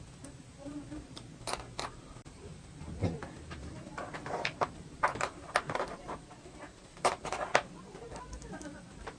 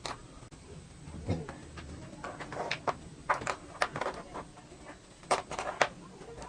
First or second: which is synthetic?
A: first